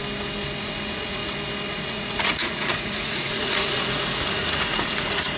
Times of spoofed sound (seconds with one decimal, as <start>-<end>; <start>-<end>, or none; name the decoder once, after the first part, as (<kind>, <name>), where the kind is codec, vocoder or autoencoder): 0.6-1.2 (vocoder, Vocos); 1.7-5.4